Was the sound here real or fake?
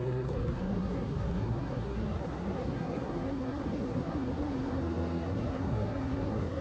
fake